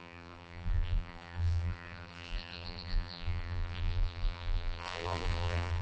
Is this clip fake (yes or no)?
yes